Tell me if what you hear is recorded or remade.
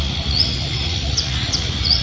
remade